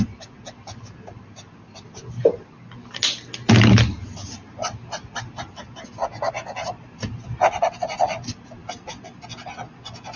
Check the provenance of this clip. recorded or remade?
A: recorded